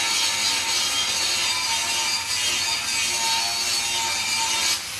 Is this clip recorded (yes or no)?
yes